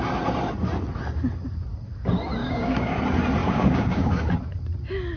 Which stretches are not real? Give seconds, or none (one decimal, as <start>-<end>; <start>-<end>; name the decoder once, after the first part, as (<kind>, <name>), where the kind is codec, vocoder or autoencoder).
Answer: 2.4-3.0 (codec, DAC); 3.4-4.2